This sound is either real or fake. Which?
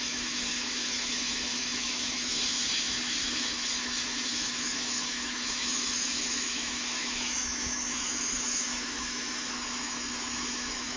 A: fake